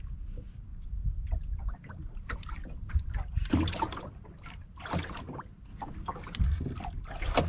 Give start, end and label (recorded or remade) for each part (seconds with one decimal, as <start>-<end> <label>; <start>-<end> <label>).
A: 0.0-0.7 recorded; 0.7-5.0 remade; 5.0-7.5 recorded